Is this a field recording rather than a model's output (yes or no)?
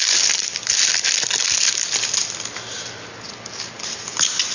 yes